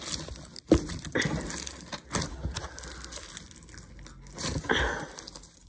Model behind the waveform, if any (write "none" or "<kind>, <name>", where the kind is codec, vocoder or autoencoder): none